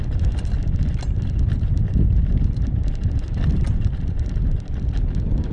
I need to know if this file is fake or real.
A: real